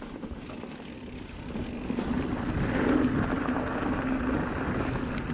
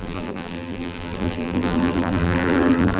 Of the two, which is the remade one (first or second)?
second